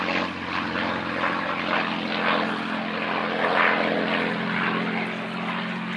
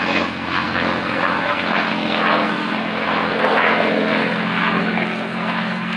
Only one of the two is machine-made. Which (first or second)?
second